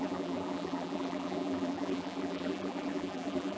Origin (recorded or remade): remade